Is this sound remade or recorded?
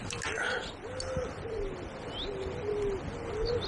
recorded